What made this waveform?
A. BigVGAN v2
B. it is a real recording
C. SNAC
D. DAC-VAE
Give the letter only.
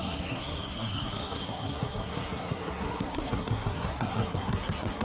C